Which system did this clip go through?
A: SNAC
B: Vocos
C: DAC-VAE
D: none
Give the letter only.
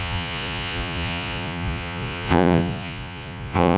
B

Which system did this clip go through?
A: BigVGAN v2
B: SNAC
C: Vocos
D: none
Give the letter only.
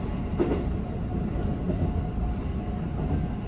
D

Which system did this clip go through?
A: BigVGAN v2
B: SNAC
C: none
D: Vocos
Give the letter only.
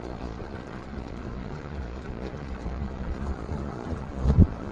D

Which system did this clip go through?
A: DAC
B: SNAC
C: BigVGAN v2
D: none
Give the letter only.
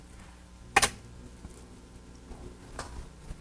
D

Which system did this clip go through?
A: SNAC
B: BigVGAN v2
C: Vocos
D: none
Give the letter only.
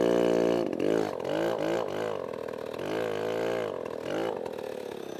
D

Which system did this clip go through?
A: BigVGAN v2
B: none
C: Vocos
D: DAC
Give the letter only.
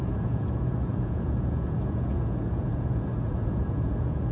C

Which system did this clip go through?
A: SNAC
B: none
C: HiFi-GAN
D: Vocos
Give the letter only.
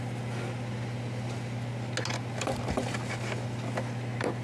B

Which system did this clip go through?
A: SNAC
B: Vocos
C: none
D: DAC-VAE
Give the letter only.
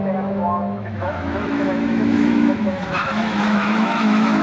D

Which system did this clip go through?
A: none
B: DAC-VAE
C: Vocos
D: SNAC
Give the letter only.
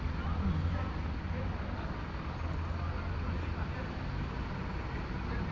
A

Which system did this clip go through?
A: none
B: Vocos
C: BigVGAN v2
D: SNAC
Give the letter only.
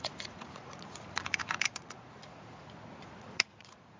B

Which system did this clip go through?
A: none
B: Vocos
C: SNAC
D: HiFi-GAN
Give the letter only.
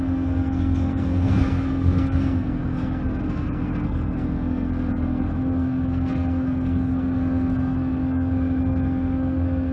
C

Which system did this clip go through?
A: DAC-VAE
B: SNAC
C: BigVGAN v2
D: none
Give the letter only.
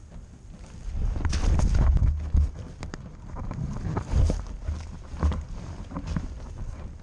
D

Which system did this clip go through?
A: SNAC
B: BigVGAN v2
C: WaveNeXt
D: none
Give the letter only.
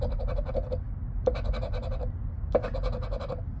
D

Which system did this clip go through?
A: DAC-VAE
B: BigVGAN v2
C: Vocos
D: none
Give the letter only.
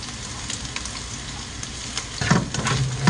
D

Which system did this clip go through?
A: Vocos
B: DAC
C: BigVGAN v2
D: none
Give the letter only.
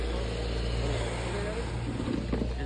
D